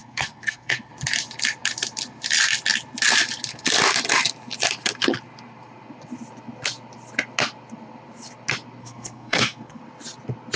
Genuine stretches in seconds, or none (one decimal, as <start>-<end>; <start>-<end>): 0.9-8.8; 9.8-10.6